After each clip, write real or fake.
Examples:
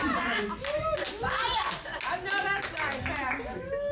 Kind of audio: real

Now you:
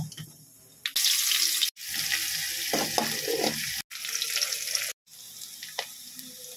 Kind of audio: real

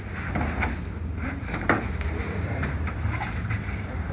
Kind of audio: fake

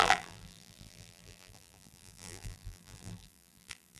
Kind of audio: fake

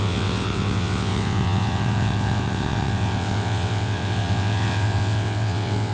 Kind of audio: fake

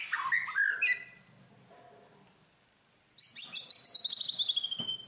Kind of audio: real